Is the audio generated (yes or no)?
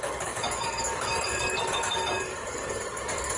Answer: yes